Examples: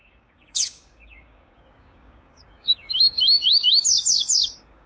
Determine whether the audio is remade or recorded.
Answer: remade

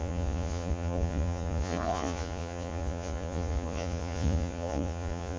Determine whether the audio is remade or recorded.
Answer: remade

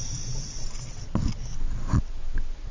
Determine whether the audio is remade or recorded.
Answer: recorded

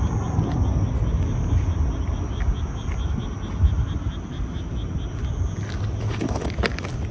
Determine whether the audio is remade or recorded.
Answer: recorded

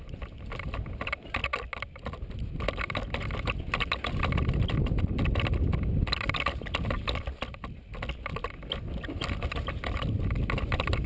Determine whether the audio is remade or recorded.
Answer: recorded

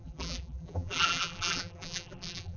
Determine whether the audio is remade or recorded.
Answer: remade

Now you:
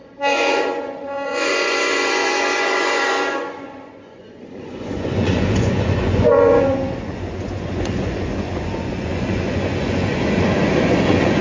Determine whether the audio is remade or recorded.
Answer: remade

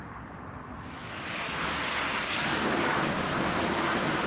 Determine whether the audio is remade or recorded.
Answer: recorded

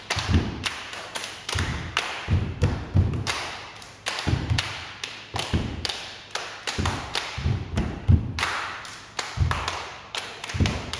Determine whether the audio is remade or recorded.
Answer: remade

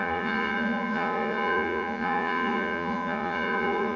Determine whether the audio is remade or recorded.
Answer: remade